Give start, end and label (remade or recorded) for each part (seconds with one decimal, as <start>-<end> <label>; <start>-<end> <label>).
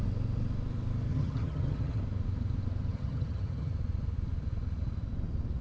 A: 0.0-1.1 recorded; 1.1-2.0 remade; 2.0-2.9 recorded; 2.9-3.7 remade; 3.7-5.6 recorded